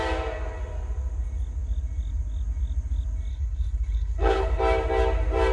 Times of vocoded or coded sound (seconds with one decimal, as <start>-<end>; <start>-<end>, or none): 3.3-4.6